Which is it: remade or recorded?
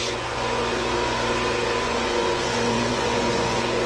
remade